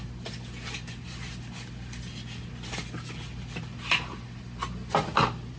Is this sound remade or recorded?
recorded